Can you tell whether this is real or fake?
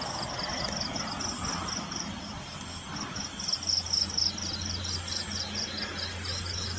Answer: real